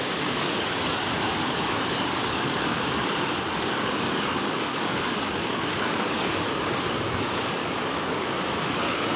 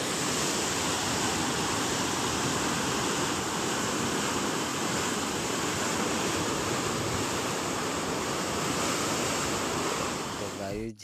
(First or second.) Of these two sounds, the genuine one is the second